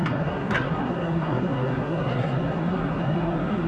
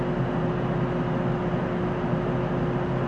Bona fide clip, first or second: second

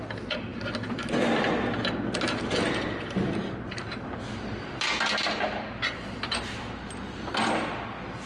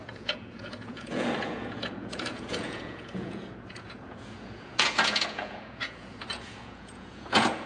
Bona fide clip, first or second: first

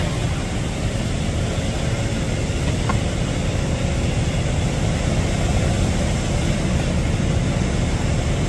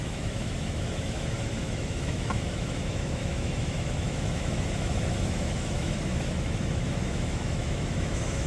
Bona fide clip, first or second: first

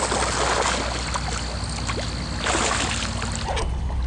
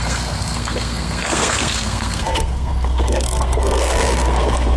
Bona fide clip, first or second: first